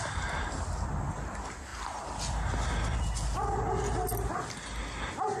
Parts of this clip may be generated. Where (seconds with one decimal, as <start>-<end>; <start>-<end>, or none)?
none